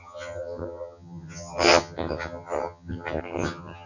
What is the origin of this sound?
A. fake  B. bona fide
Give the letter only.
A